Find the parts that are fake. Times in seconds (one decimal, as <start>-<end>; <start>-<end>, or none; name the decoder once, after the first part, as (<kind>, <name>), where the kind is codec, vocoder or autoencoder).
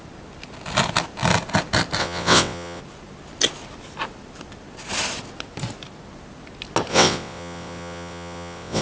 2.0-2.8 (vocoder, WaveNeXt); 6.9-8.8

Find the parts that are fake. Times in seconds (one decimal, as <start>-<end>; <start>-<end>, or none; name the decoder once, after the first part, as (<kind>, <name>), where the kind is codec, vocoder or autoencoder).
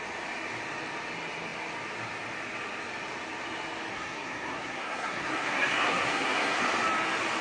3.9-6.6 (codec, SNAC)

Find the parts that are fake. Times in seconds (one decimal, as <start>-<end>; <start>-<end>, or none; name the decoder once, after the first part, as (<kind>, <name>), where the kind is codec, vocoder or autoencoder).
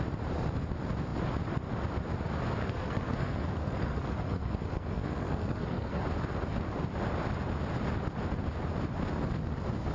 2.6-6.0 (codec, SNAC)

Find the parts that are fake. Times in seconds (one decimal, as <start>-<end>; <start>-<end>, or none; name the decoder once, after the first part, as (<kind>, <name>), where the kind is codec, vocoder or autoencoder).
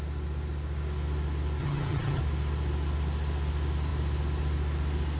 1.6-2.2 (vocoder, HiFi-GAN)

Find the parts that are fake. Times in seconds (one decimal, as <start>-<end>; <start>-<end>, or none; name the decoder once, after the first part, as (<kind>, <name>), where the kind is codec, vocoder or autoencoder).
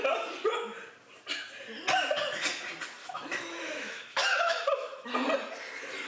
3.0-5.1 (autoencoder, DAC-VAE)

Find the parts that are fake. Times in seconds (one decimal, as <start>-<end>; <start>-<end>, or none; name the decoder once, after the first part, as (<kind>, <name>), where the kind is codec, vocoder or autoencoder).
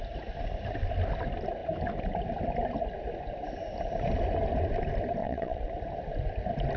5.2-5.7 (vocoder, WaveNeXt)